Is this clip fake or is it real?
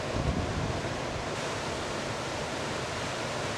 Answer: fake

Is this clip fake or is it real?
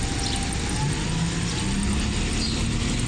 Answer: real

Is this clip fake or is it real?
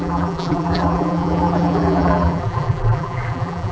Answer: fake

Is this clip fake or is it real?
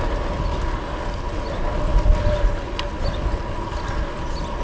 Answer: real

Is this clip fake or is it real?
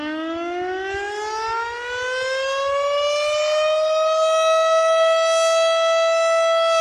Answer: real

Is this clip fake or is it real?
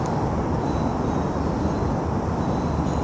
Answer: real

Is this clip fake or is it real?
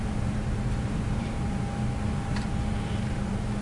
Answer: fake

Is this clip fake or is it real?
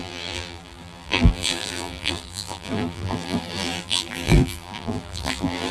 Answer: fake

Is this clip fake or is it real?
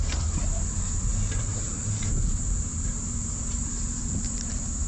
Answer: fake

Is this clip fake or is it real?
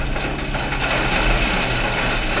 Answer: real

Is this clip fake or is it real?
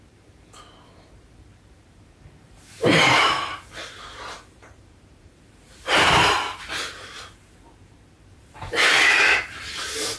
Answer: fake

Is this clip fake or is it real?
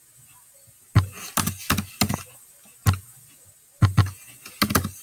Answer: real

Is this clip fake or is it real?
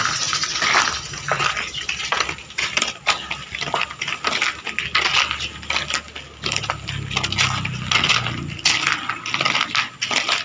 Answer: real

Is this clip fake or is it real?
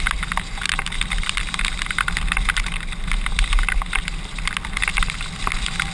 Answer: real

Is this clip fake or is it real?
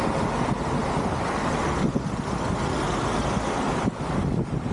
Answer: real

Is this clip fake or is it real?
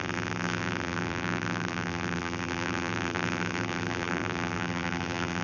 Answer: fake